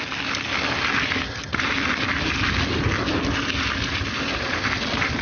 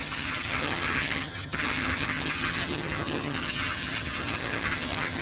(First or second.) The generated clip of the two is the second